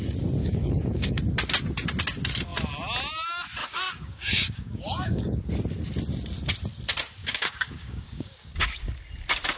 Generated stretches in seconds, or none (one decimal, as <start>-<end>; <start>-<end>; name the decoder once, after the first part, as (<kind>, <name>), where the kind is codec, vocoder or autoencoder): 0.4-1.2 (codec, DAC); 3.6-5.5; 7.2-8.8